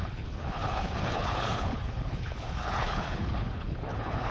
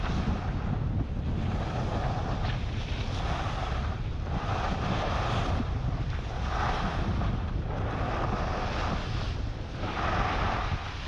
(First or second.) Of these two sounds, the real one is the second